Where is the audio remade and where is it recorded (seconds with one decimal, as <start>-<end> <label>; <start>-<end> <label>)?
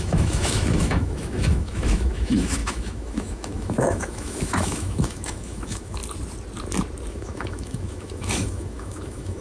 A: 0.0-6.0 remade; 6.0-7.1 recorded; 7.1-9.4 remade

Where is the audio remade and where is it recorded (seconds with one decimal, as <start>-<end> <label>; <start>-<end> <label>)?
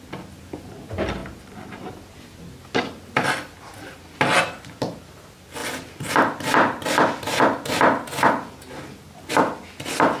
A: 0.0-1.2 recorded; 1.2-1.9 remade; 1.9-10.2 recorded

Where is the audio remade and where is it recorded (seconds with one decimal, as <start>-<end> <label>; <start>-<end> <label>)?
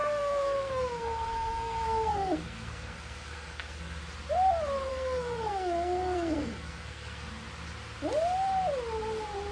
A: 0.0-4.0 remade; 4.0-4.9 recorded; 4.9-7.3 remade; 7.3-9.5 recorded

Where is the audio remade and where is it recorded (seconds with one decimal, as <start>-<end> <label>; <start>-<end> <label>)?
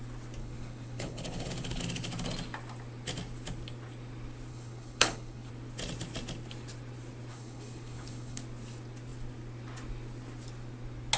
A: 0.0-0.4 recorded; 0.4-1.8 remade; 1.8-4.5 recorded; 4.5-5.5 remade; 5.5-7.3 recorded; 7.3-8.4 remade; 8.4-11.2 recorded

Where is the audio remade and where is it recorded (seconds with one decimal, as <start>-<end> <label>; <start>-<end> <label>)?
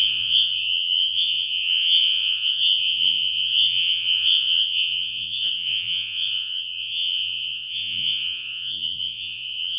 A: 0.0-9.8 remade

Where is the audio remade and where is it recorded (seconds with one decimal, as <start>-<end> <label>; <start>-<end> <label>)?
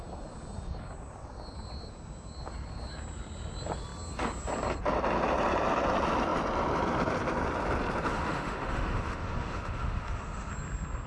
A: 0.0-8.1 recorded; 8.1-10.5 remade; 10.5-11.1 recorded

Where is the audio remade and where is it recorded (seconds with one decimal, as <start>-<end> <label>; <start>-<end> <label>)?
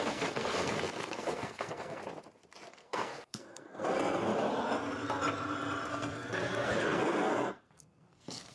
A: 0.0-2.0 remade; 2.0-2.7 recorded; 2.7-4.3 remade; 4.3-5.9 recorded; 5.9-8.5 remade